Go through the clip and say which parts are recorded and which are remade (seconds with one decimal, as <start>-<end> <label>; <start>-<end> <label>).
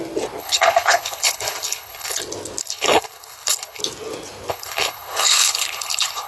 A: 0.0-0.4 recorded; 0.4-2.2 remade; 2.2-2.6 recorded; 2.6-3.8 remade; 3.8-4.5 recorded; 4.5-6.3 remade